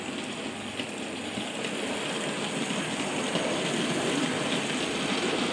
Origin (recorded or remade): recorded